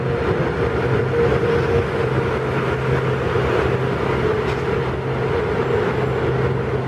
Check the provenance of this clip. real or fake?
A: real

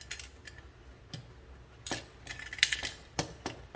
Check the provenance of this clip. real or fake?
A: real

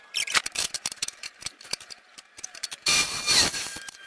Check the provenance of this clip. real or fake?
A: fake